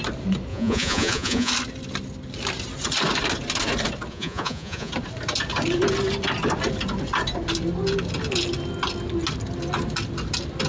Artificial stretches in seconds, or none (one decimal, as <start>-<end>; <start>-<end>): 0.5-1.5; 4.1-4.9

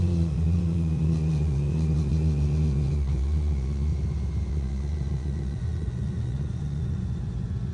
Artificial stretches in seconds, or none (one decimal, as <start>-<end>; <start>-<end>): 0.0-3.9; 4.5-7.7

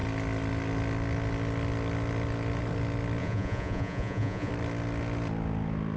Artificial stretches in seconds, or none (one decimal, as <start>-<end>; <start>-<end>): 3.2-4.5

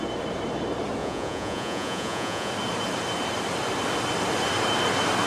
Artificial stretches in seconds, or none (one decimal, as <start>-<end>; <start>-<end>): 1.0-2.5

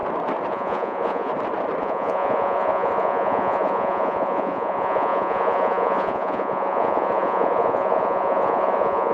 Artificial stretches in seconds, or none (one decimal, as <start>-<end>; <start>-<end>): 0.5-1.3; 1.8-9.1

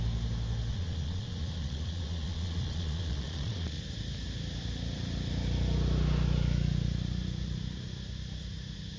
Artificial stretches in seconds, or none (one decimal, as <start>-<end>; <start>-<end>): 0.7-3.8

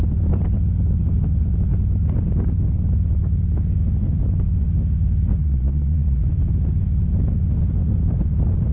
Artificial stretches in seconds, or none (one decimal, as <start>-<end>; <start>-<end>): 5.4-6.2

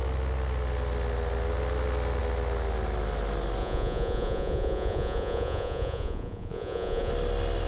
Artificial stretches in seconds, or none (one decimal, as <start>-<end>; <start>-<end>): 3.6-7.1